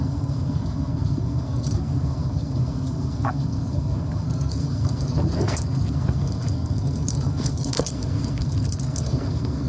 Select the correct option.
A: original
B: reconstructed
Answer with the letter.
B